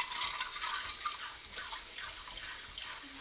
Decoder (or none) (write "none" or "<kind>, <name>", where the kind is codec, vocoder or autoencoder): none